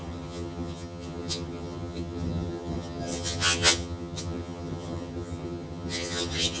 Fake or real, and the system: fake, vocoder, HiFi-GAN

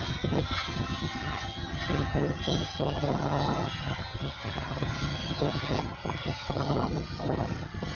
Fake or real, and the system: fake, vocoder, HiFi-GAN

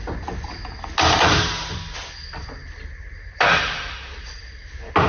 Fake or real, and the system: real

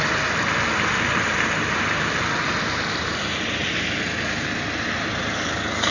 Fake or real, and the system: real